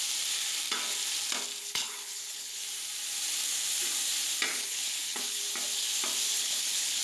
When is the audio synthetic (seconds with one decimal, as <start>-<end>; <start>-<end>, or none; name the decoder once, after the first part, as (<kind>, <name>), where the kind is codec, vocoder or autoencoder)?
1.6-2.6 (codec, HILCodec); 4.5-5.4; 6.3-7.0